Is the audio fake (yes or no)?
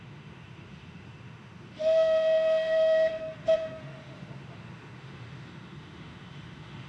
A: yes